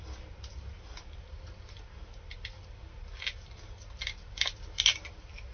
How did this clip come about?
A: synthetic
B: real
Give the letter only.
B